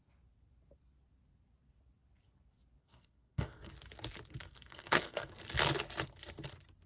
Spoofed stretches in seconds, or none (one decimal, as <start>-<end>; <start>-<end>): 2.8-3.7; 4.4-5.3